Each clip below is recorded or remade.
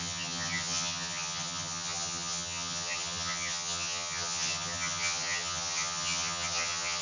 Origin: remade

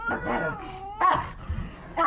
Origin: recorded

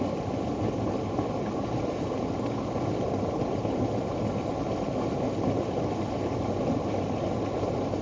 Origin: recorded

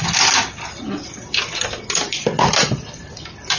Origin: recorded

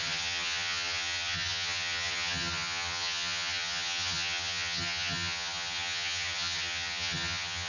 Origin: remade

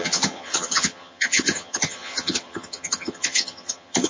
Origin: remade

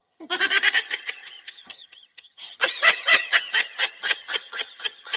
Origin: remade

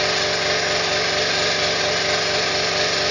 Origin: recorded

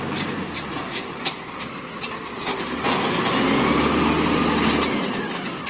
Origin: recorded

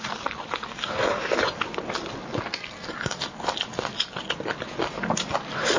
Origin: recorded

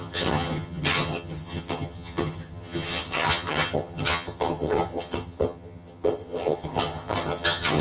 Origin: remade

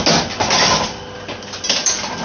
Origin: recorded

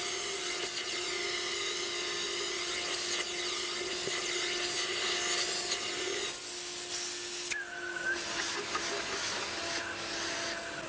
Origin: recorded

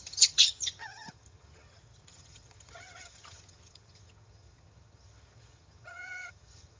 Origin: remade